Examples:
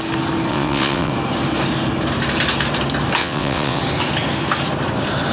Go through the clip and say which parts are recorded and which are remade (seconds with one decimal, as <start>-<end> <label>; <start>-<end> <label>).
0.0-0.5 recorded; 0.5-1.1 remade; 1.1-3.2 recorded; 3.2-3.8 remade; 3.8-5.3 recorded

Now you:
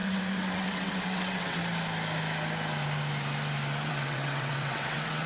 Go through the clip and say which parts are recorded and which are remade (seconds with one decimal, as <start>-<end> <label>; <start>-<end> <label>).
0.0-1.6 remade; 1.6-3.9 recorded; 3.9-5.3 remade

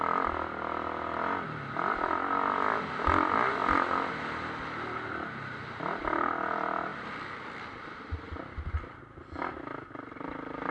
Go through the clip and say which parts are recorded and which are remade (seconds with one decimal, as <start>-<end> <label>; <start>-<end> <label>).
0.0-10.7 recorded

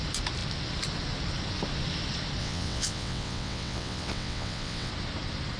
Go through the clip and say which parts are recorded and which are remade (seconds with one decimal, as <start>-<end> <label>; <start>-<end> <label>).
0.0-2.4 recorded; 2.4-4.9 remade; 4.9-5.6 recorded

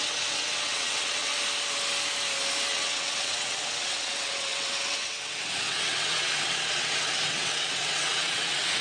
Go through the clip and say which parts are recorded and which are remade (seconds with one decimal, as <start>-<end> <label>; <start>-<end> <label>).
0.0-1.3 remade; 1.3-2.7 recorded; 2.7-8.8 remade

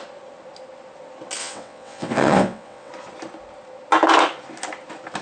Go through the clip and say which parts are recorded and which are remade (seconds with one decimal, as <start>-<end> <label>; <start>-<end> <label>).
0.0-1.4 recorded; 1.4-2.9 remade; 2.9-5.2 recorded

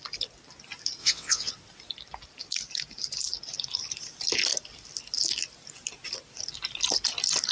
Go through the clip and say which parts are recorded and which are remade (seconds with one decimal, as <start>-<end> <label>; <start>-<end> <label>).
0.0-1.0 recorded; 1.0-1.5 remade; 1.5-7.5 recorded

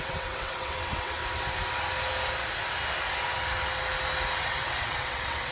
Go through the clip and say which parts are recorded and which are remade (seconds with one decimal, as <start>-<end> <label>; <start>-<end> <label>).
0.0-1.2 remade; 1.2-4.5 recorded; 4.5-5.5 remade